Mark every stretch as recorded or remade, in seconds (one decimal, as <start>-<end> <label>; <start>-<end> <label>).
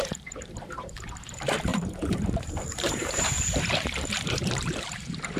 0.0-5.4 remade